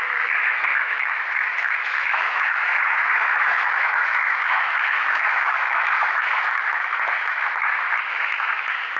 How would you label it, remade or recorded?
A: remade